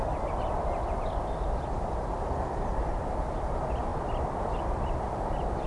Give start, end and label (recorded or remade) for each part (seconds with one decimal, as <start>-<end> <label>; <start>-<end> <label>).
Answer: 0.0-5.7 remade